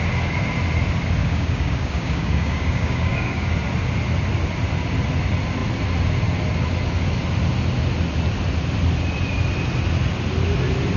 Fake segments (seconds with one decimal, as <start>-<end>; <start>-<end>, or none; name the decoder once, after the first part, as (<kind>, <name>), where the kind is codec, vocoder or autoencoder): 1.2-3.5 (codec, DAC)